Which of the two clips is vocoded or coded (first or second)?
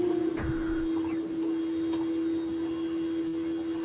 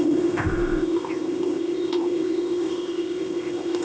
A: second